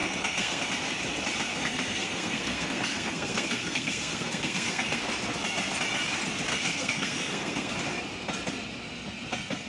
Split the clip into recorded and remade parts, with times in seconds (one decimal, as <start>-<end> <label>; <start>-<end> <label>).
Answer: 0.0-0.7 remade; 0.7-1.5 recorded; 1.5-5.0 remade; 5.0-6.5 recorded; 6.5-7.7 remade; 7.7-9.7 recorded